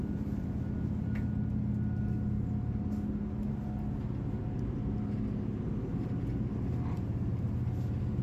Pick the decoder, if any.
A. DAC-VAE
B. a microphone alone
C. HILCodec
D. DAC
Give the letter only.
B